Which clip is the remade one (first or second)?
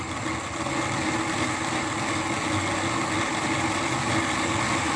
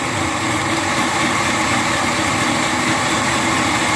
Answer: second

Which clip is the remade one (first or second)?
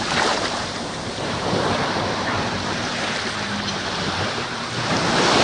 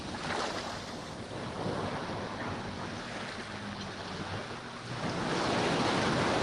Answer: first